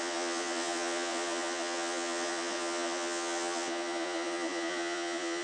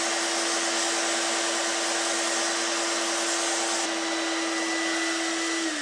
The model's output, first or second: first